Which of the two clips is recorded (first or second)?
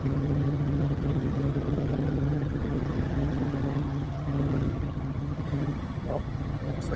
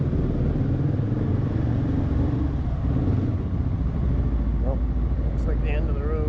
second